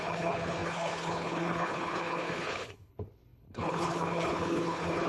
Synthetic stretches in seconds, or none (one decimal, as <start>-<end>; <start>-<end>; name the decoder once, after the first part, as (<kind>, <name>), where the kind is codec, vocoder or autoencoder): 0.0-5.1 (codec, HILCodec)

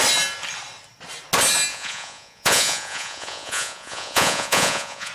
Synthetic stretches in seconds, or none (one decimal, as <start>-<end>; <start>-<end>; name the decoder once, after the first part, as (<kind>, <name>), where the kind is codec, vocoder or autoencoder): 1.7-5.1 (vocoder, Vocos)

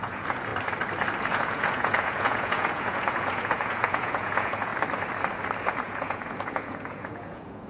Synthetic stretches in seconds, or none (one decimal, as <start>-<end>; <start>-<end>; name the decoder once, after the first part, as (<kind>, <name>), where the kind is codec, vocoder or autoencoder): 0.0-0.5 (vocoder, Vocos); 1.2-4.7; 5.7-7.7

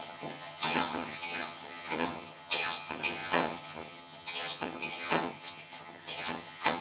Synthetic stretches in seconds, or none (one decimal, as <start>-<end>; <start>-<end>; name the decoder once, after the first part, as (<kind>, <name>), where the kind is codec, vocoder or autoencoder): 0.0-6.8 (vocoder, HiFi-GAN)

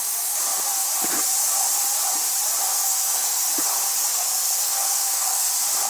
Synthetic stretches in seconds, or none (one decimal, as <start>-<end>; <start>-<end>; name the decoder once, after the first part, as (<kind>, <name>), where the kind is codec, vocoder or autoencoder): 2.7-3.4 (codec, SNAC); 4.1-5.5

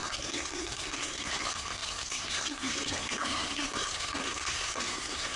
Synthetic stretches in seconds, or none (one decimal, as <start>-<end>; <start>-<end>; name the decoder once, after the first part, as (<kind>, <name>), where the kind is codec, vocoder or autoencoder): 0.0-5.4 (codec, SNAC)

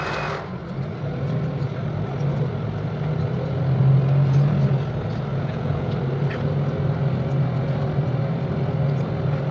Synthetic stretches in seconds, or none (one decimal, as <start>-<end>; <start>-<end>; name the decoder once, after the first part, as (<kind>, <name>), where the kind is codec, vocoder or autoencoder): 5.3-5.9 (vocoder, Vocos)

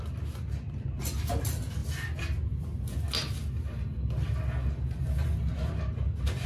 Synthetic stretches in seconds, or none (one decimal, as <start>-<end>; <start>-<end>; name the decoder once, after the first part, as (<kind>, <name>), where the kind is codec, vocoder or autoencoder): none